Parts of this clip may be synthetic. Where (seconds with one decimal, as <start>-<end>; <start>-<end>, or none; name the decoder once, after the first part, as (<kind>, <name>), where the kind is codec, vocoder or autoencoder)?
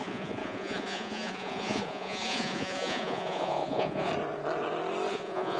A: 0.0-4.1 (vocoder, Vocos); 5.1-5.6